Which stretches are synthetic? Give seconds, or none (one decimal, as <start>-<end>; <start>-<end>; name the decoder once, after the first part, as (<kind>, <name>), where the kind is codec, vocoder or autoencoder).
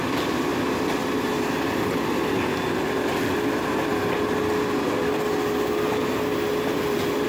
none